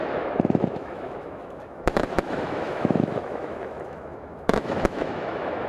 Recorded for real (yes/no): no